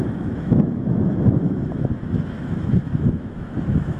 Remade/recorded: remade